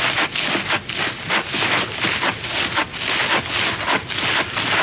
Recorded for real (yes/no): yes